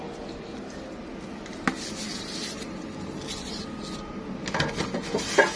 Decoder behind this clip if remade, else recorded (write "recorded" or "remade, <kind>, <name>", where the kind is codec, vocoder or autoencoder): recorded